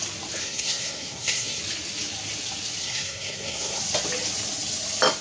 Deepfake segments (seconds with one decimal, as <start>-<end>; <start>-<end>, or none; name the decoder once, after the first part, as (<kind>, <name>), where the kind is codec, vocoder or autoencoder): 0.4-1.6 (codec, SNAC); 2.8-3.8